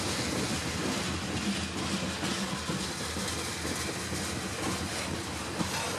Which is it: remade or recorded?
recorded